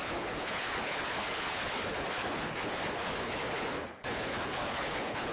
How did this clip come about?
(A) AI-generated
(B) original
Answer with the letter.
A